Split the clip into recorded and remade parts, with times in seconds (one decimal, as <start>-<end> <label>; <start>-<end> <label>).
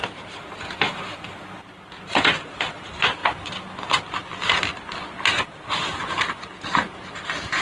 0.0-7.6 recorded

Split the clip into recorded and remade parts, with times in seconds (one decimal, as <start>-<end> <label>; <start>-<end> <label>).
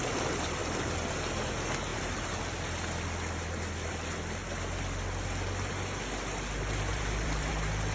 0.0-0.6 recorded; 0.6-1.1 remade; 1.1-6.9 recorded; 6.9-7.5 remade; 7.5-7.9 recorded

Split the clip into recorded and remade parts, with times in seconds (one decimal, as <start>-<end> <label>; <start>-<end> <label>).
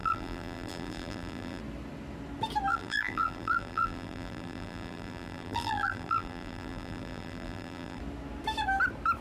0.0-1.6 remade; 1.6-2.7 recorded; 2.7-8.0 remade; 8.0-9.2 recorded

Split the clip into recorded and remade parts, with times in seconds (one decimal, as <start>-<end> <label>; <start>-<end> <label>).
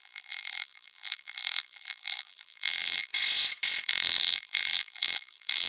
0.0-3.1 remade; 3.1-3.8 recorded; 3.8-5.7 remade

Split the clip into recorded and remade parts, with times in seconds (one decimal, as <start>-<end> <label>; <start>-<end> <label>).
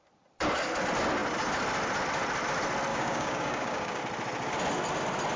0.0-2.9 recorded; 2.9-4.0 remade; 4.0-5.4 recorded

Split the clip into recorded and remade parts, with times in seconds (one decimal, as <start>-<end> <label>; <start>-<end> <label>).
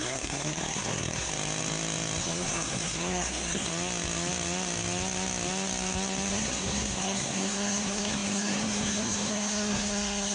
0.0-1.3 remade; 1.3-2.2 recorded; 2.2-3.7 remade; 3.7-6.3 recorded; 6.3-10.3 remade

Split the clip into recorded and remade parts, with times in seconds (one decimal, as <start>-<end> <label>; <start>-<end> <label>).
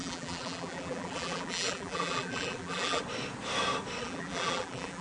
0.0-3.0 remade; 3.0-4.0 recorded; 4.0-5.0 remade